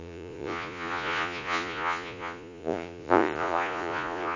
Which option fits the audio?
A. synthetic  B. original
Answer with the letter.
A